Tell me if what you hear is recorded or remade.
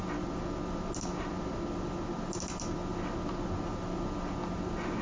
recorded